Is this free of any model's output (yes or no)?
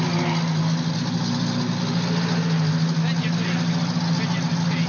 yes